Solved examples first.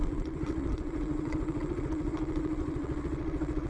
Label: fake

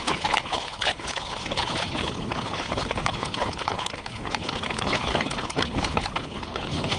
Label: fake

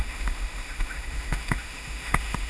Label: fake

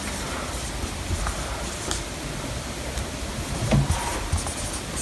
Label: real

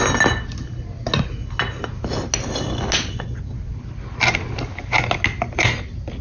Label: real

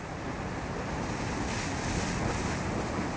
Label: real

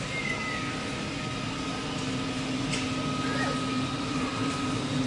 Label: real